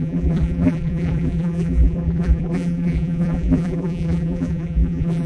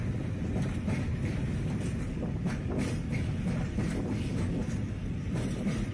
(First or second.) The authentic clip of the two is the second